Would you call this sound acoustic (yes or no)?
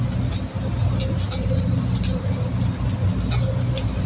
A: yes